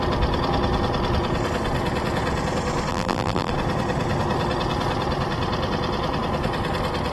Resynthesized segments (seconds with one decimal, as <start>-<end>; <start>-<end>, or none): 2.9-3.5

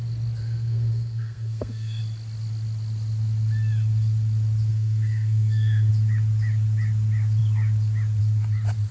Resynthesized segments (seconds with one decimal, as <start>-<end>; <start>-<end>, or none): 0.4-2.0; 4.7-5.9

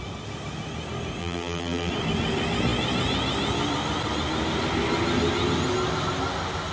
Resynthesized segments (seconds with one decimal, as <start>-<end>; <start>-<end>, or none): 1.2-1.9

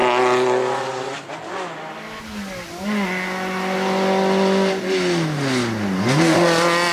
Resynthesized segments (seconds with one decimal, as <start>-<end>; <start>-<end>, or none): none

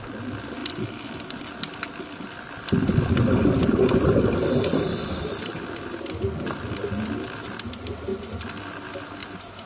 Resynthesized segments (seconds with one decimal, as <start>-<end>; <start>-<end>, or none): 0.6-5.5; 8.1-8.6; 9.2-9.7